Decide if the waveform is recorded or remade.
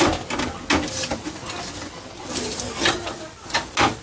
recorded